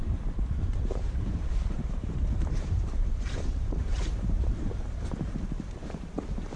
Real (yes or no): no